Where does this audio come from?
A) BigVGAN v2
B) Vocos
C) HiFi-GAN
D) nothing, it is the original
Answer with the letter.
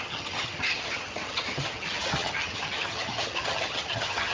C